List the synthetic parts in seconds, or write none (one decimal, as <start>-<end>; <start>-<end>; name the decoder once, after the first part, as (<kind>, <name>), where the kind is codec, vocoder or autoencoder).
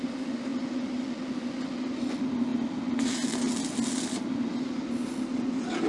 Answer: 0.5-1.2 (vocoder, BigVGAN v2)